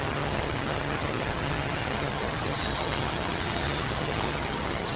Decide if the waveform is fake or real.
fake